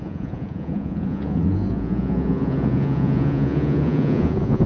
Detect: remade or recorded remade